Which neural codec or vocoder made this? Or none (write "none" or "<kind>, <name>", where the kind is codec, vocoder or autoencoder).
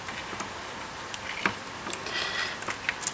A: none